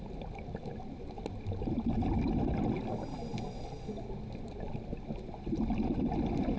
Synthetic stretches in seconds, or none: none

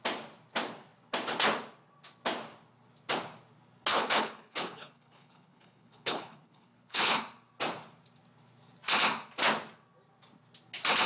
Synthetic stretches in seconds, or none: 3.9-7.2

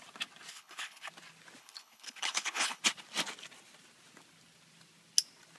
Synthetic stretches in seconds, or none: 0.5-1.1; 1.6-2.8